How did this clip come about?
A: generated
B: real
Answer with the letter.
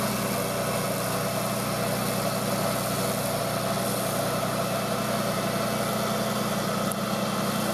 B